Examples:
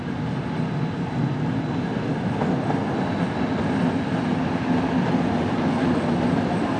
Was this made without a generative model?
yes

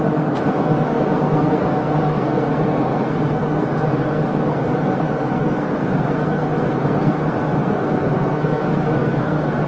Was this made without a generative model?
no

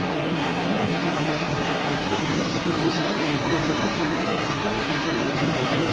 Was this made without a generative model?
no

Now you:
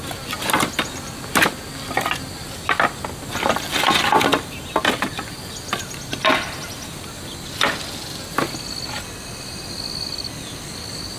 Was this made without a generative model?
yes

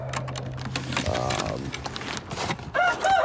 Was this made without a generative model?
yes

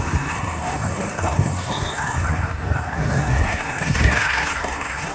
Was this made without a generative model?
no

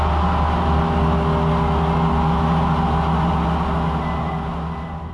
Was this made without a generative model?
yes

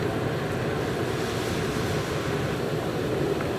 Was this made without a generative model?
yes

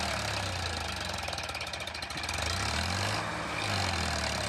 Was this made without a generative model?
yes